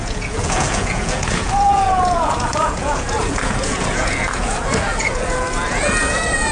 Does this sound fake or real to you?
fake